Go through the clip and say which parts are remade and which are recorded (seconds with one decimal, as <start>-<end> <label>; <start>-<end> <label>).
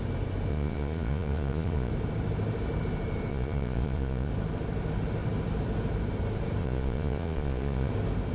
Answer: 0.0-0.5 recorded; 0.5-1.9 remade; 1.9-3.3 recorded; 3.3-4.3 remade; 4.3-6.6 recorded; 6.6-7.9 remade; 7.9-8.3 recorded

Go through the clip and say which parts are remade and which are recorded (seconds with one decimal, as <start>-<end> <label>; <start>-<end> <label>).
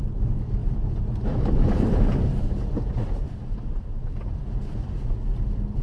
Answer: 0.0-0.6 recorded; 0.6-3.3 remade; 3.3-3.9 recorded; 3.9-4.4 remade; 4.4-5.8 recorded